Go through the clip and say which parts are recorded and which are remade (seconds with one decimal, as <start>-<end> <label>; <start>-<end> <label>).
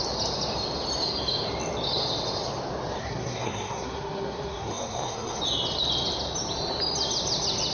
0.0-3.0 recorded; 3.0-5.4 remade; 5.4-7.7 recorded